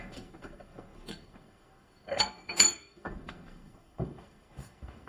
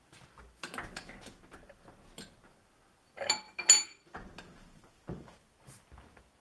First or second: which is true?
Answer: second